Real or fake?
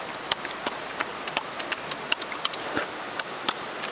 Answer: real